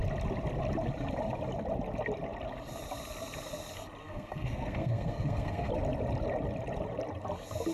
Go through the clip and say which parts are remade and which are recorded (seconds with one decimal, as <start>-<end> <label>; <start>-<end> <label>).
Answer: 0.0-4.0 recorded; 4.0-5.7 remade; 5.7-7.7 recorded